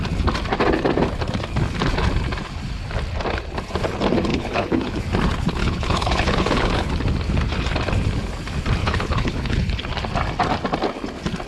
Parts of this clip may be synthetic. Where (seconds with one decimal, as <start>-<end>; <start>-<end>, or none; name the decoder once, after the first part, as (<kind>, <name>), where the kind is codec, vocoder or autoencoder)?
4.3-5.0 (codec, HILCodec); 5.6-6.9; 8.8-9.8